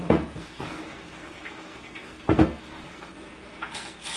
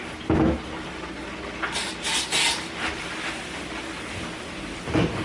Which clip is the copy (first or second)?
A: first